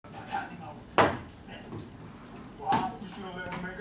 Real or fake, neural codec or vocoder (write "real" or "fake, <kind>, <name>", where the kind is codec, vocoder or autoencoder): real